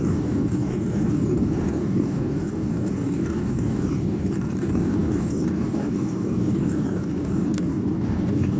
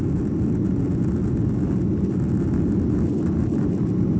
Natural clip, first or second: second